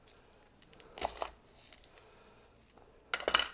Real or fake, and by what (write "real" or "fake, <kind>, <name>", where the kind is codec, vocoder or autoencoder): real